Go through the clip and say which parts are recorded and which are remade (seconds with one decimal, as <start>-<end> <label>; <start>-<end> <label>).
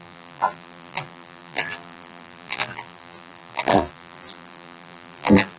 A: 0.0-5.6 remade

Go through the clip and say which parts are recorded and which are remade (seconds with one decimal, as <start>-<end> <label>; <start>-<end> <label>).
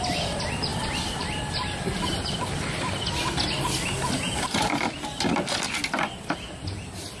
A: 0.0-1.9 recorded; 1.9-4.2 remade; 4.2-7.2 recorded